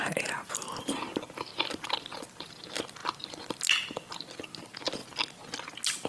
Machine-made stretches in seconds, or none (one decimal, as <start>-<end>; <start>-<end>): 0.0-5.0